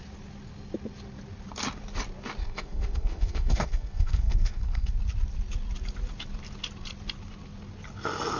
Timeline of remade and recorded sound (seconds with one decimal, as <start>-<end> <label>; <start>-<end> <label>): 0.0-2.4 recorded; 2.4-4.9 remade; 4.9-8.4 recorded